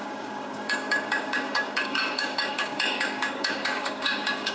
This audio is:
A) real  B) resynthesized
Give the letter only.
B